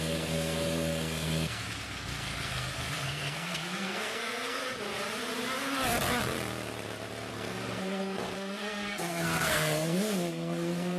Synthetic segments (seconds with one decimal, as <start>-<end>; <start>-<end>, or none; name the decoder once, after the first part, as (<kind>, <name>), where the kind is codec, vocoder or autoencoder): 0.0-4.6 (codec, SNAC); 7.3-11.0